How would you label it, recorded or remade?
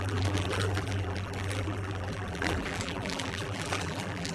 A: remade